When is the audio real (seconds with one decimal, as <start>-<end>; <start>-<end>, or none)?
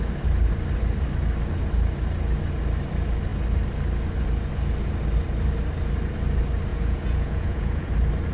0.0-6.7; 7.9-8.3